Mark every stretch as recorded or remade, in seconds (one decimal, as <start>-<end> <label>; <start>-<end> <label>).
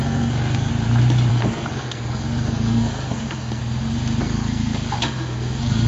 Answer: 0.0-0.7 remade; 0.7-1.3 recorded; 1.3-3.6 remade; 3.6-4.2 recorded; 4.2-5.9 remade